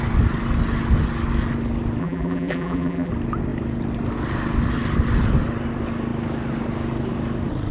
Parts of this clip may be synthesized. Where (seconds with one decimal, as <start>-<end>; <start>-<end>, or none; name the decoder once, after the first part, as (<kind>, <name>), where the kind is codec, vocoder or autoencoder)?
2.0-3.1 (vocoder, BigVGAN v2)